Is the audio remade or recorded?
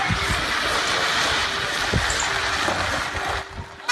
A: recorded